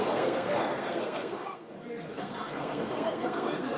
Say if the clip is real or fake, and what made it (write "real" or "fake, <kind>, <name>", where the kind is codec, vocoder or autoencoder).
fake, codec, SNAC